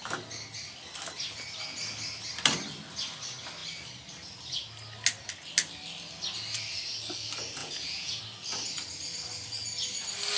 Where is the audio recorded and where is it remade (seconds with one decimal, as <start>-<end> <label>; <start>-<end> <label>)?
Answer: 0.0-7.6 recorded; 7.6-8.2 remade; 8.2-10.4 recorded